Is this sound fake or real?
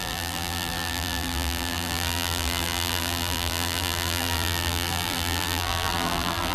fake